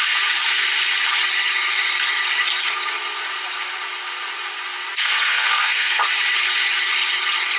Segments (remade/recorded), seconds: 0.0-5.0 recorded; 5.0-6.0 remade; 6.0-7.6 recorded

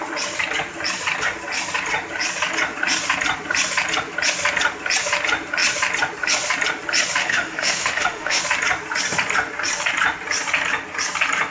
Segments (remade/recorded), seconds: 0.0-7.2 recorded; 7.2-8.4 remade; 8.4-11.5 recorded

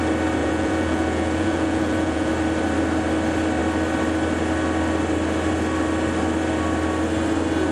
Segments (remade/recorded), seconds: 0.0-0.4 recorded; 0.4-2.3 remade; 2.3-7.7 recorded

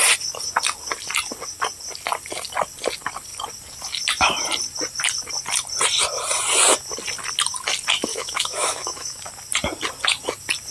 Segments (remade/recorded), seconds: 0.0-8.1 recorded; 8.1-9.3 remade; 9.3-10.7 recorded

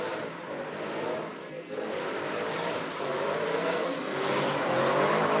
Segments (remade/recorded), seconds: 0.0-1.4 recorded; 1.4-1.9 remade; 1.9-3.5 recorded; 3.5-4.3 remade; 4.3-5.4 recorded

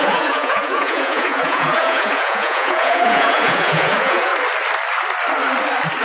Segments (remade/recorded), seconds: 0.0-4.3 remade; 4.3-6.0 recorded